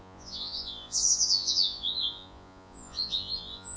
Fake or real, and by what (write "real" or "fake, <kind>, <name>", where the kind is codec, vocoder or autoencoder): fake, vocoder, Vocos